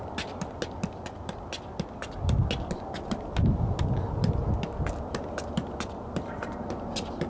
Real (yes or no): yes